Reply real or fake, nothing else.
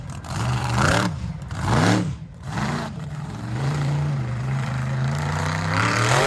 fake